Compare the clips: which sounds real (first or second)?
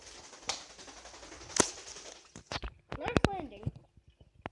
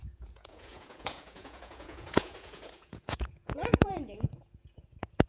first